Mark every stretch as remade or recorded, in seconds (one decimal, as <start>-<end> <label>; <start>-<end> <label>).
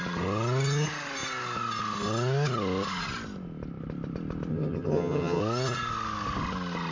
0.0-4.5 recorded; 4.5-5.4 remade; 5.4-6.9 recorded